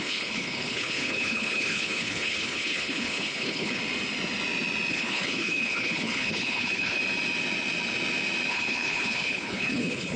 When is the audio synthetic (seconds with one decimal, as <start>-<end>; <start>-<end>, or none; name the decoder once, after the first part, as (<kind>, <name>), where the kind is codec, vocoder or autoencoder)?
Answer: 0.0-3.8 (codec, HILCodec); 4.9-7.0; 8.5-10.2